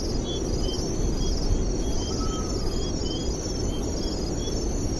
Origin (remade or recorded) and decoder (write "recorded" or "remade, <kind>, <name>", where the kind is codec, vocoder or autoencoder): recorded